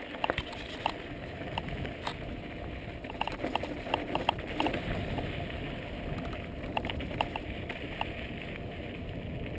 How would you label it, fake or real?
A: real